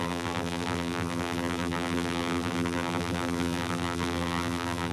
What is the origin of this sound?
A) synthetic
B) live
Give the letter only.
A